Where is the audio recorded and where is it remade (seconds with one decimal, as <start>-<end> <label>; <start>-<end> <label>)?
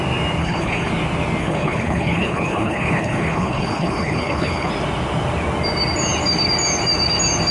0.0-0.4 recorded; 0.4-0.9 remade; 0.9-1.4 recorded; 1.4-4.7 remade; 4.7-7.5 recorded